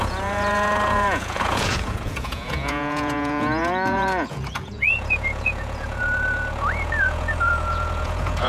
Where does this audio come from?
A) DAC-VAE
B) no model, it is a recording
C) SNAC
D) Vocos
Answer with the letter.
D